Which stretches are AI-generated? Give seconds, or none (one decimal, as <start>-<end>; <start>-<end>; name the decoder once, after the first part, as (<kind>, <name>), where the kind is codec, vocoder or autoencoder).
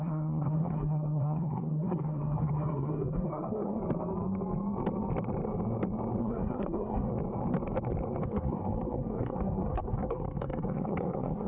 0.0-3.8 (codec, SNAC); 6.2-7.1; 8.2-11.5